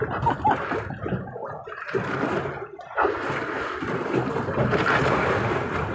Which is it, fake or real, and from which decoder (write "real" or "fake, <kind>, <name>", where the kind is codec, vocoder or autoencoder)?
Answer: real